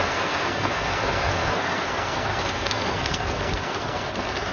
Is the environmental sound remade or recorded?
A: remade